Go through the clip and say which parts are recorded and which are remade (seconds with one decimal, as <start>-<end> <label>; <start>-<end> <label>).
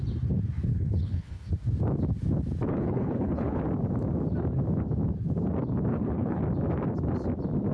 0.0-0.7 recorded; 0.7-1.5 remade; 1.5-2.7 recorded; 2.7-3.6 remade; 3.6-5.9 recorded; 5.9-6.4 remade; 6.4-7.7 recorded